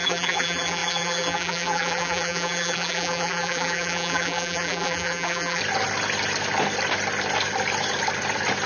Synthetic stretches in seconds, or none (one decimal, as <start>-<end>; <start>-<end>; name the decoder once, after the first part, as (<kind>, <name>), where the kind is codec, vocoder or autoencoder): 0.0-5.6 (vocoder, BigVGAN v2)